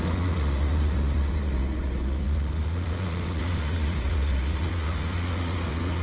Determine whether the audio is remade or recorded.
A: remade